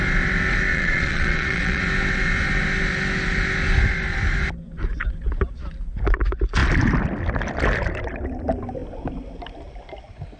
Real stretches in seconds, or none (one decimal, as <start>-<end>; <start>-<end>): 0.0-0.7; 1.8-10.4